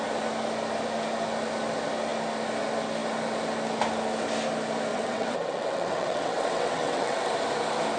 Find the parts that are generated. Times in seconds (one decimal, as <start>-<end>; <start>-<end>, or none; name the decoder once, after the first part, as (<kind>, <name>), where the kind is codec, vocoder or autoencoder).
4.9-7.2 (vocoder, WaveNeXt)